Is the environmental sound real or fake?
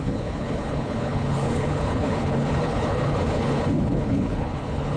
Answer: fake